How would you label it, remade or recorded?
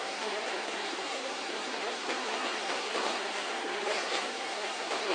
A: remade